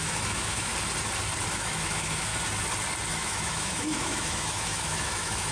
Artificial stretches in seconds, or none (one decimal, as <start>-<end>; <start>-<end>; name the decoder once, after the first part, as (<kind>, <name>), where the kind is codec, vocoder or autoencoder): 0.0-0.7 (autoencoder, DAC-VAE); 1.5-2.3; 3.1-5.5